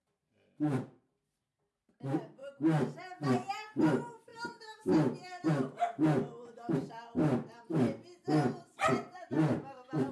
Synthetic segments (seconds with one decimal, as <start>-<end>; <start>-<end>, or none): none